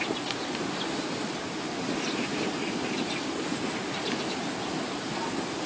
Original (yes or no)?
yes